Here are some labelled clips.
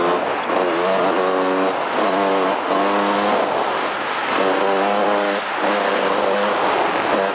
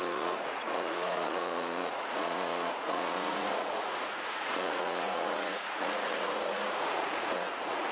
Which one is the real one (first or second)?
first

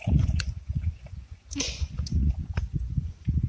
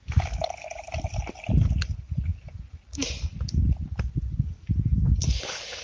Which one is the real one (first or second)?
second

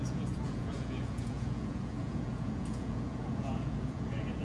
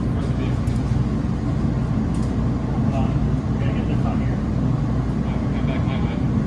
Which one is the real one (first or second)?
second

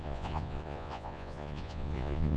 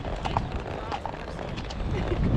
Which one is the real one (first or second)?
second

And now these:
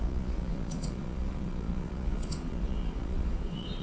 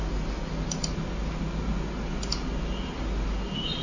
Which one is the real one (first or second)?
second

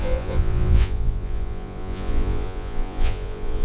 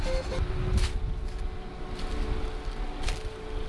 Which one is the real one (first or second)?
second